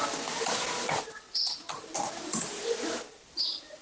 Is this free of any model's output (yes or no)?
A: yes